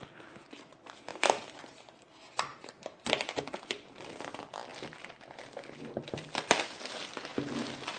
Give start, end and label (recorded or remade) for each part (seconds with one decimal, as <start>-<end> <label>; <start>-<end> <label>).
0.0-1.1 recorded; 1.1-1.6 remade; 1.6-2.5 recorded; 2.5-4.1 remade; 4.1-8.0 recorded